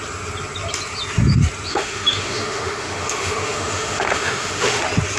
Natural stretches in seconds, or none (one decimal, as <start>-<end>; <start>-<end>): 0.0-1.7; 4.8-5.2